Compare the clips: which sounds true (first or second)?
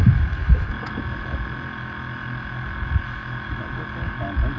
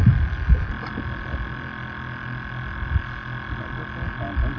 second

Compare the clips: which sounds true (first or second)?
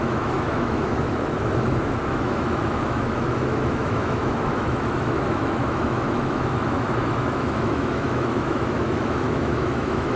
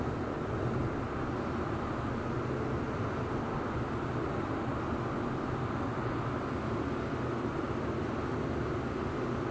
second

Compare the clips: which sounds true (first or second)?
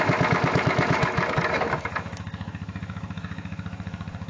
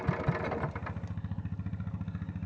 second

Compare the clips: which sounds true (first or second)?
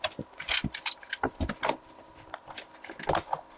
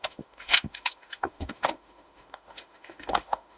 first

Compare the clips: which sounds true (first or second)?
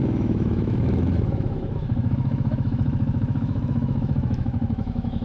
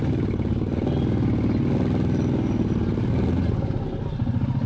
second